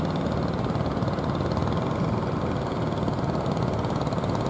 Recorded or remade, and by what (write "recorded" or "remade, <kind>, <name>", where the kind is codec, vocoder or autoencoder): recorded